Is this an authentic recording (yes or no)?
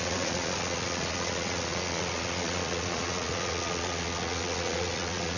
no